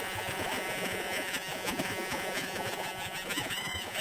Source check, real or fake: fake